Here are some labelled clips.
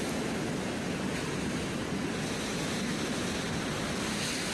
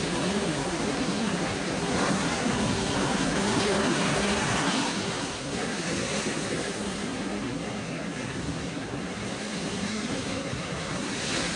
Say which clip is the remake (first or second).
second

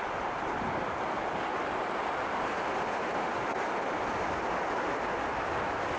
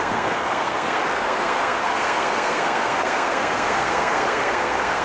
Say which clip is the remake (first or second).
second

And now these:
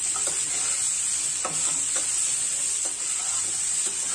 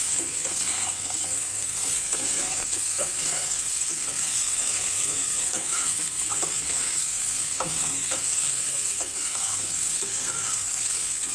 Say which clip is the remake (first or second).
second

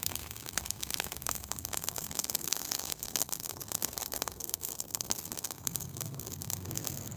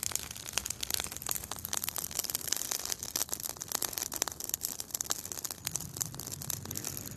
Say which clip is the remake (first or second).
first